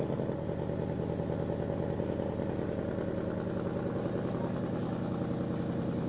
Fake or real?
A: real